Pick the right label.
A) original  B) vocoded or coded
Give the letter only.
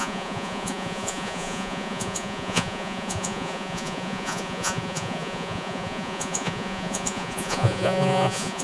B